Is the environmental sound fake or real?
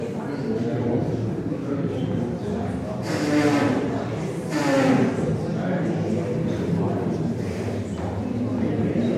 real